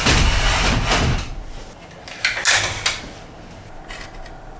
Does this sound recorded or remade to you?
recorded